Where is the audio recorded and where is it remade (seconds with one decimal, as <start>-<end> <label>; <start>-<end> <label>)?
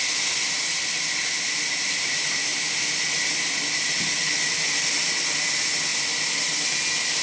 0.0-7.2 recorded